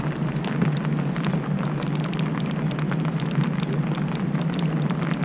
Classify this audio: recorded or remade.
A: recorded